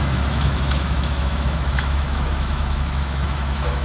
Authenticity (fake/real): fake